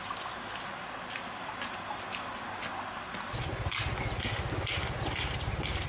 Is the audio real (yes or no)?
yes